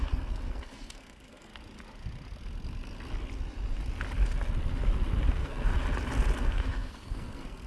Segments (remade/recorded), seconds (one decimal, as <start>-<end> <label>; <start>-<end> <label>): 0.0-1.5 remade; 1.5-5.3 recorded; 5.3-5.7 remade; 5.7-6.4 recorded; 6.4-7.7 remade